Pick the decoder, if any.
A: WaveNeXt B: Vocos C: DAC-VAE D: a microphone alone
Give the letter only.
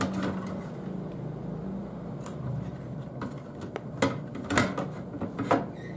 D